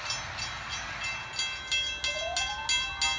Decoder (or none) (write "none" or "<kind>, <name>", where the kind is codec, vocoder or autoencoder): none